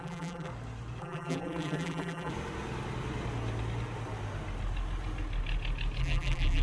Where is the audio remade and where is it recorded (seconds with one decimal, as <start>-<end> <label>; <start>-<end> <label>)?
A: 0.0-0.5 remade; 0.5-1.0 recorded; 1.0-2.3 remade; 2.3-6.0 recorded; 6.0-6.6 remade